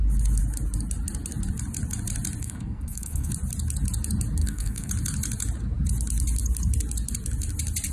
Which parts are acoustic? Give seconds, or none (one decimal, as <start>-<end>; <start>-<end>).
0.0-2.4; 3.3-4.4; 4.9-7.9